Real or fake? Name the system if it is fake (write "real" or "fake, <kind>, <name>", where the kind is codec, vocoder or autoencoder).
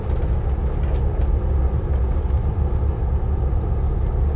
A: real